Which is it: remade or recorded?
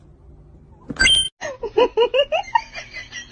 recorded